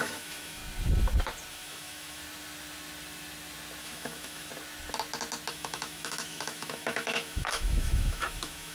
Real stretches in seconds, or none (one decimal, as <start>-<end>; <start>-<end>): 0.6-1.5; 2.2-3.8; 4.5-5.5